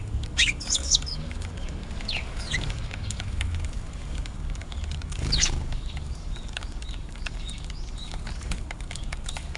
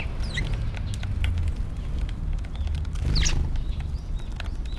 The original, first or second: second